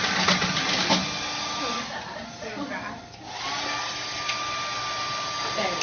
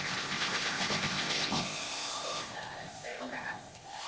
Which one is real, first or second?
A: first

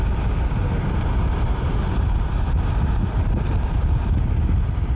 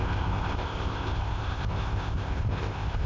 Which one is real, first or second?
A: first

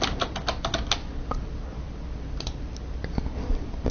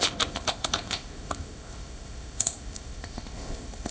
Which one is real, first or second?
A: first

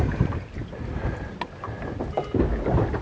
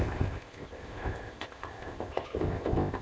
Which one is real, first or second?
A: first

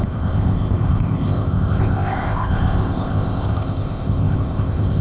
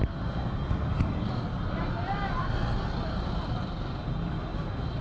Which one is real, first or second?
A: second